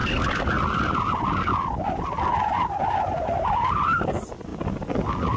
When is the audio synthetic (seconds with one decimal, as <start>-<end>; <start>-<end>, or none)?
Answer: none

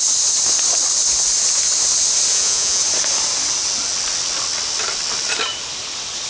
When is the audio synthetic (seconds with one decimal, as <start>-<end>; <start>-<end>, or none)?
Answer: 2.3-2.8

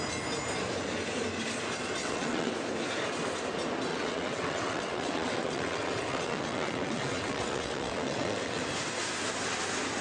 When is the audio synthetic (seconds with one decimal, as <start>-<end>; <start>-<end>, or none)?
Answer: 2.0-2.5; 3.9-8.6

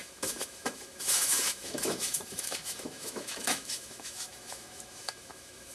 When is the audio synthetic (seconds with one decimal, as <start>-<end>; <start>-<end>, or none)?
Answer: 0.0-5.7